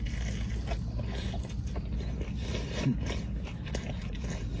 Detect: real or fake real